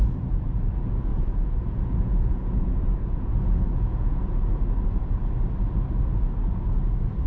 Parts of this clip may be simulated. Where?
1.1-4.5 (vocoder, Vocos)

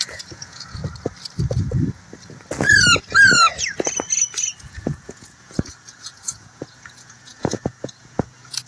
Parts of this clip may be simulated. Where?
0.0-0.8 (vocoder, Vocos); 4.6-8.7

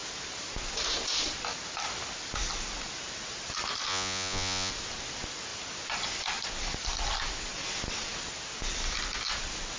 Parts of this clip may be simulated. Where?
3.9-4.7 (vocoder, Vocos)

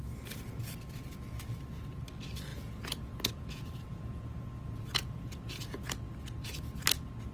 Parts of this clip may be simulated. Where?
2.5-5.9 (vocoder, Vocos)

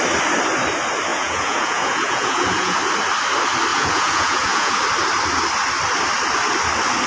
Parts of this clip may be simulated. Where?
1.1-2.8 (vocoder, Vocos); 3.7-4.8

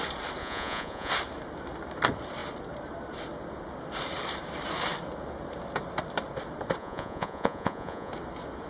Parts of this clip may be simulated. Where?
0.4-1.1 (vocoder, Vocos); 6.8-8.1